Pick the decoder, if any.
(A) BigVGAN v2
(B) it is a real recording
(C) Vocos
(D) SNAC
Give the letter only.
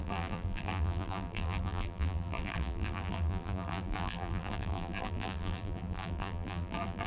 A